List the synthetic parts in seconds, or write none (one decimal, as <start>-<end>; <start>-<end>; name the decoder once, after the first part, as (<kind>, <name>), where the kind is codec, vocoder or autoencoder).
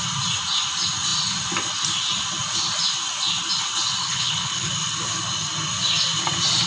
4.0-4.7 (codec, HILCodec)